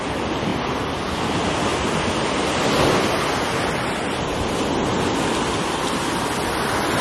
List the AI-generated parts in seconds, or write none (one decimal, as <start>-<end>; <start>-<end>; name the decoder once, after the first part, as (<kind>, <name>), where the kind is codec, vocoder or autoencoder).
none